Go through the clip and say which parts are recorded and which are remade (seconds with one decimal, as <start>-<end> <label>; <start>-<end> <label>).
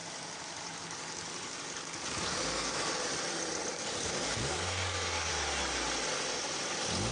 0.0-3.1 remade; 3.1-3.7 recorded; 3.7-5.3 remade; 5.3-7.1 recorded